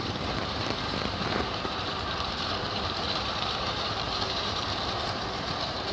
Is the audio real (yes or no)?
no